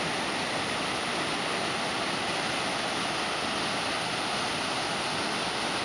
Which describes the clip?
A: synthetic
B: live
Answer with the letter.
B